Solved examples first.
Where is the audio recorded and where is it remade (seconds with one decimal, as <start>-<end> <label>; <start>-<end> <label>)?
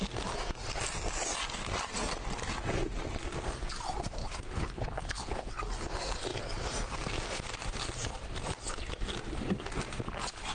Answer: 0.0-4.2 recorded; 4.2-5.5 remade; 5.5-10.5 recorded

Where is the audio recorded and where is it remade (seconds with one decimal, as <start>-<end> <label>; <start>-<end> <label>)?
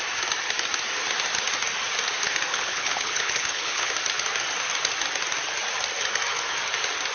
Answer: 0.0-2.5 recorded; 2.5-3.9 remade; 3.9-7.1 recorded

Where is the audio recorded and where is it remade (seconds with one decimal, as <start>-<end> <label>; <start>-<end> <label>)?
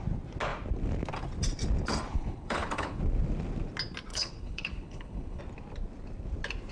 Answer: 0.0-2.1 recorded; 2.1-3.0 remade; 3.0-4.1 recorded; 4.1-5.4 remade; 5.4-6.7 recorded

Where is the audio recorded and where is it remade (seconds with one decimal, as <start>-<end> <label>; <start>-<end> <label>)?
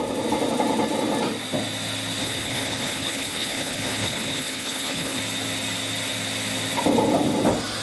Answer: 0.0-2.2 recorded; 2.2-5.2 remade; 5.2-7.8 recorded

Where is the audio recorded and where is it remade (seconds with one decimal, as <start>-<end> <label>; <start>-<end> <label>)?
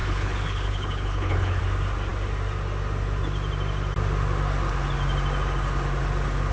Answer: 0.0-1.6 remade; 1.6-6.5 recorded